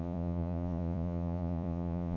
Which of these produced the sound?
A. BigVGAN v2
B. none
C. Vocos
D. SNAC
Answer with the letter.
C